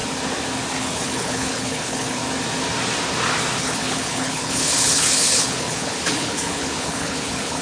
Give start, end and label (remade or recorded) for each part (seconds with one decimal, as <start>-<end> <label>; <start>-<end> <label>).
0.0-0.7 recorded; 0.7-2.2 remade; 2.2-3.6 recorded; 3.6-7.6 remade